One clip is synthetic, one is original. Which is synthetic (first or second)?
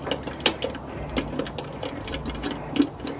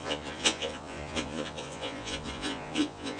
second